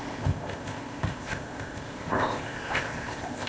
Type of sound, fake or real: fake